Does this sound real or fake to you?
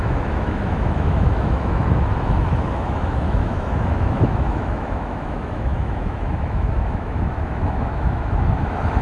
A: fake